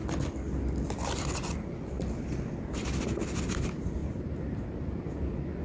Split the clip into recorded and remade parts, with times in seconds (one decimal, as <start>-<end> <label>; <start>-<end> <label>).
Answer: 0.0-4.0 recorded; 4.0-5.0 remade; 5.0-5.6 recorded